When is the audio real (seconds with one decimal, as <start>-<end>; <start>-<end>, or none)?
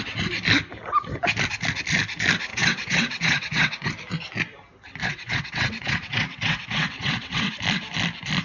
0.0-2.5; 3.9-5.0; 7.5-8.4